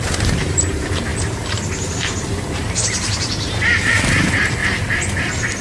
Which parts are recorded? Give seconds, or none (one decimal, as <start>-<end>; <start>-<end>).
4.6-5.6

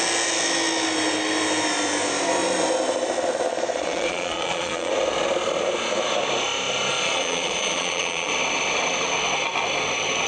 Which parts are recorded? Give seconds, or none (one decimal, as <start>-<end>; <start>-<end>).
0.0-3.5; 4.9-6.9; 8.3-10.3

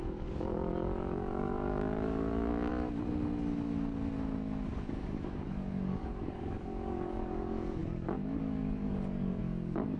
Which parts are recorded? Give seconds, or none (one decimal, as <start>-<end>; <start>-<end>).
2.7-4.7